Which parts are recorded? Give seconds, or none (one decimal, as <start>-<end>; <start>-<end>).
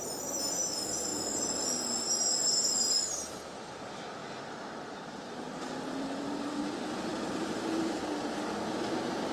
0.0-4.2; 6.6-7.1; 8.0-9.3